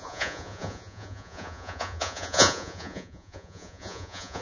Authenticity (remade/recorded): remade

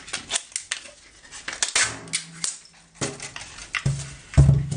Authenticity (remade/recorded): recorded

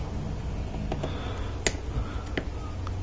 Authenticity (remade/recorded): recorded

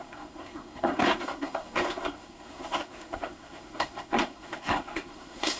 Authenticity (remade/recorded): remade